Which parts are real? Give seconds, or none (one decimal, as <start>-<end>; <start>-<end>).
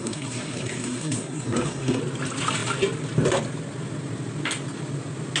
2.0-5.4